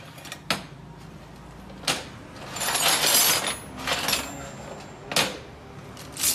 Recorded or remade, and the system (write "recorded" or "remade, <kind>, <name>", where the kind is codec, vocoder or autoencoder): recorded